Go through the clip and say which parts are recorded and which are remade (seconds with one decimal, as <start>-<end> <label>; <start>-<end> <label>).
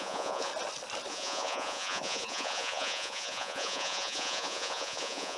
0.0-0.5 remade; 0.5-1.1 recorded; 1.1-5.4 remade